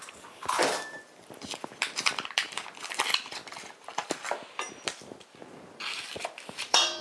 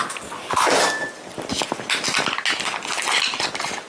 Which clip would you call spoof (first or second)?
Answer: first